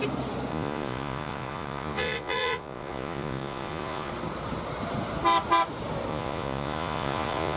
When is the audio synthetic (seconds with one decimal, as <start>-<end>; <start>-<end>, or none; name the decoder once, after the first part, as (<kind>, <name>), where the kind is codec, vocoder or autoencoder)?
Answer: 0.5-4.1 (vocoder, Vocos); 6.1-7.6